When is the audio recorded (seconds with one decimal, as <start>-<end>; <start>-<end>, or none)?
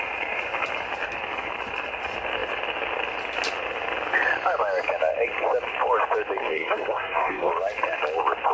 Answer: 0.0-6.4; 7.5-8.5